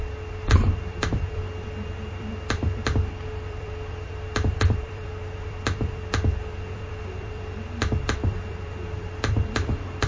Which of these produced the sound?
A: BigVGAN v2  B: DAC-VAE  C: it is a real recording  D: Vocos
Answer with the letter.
A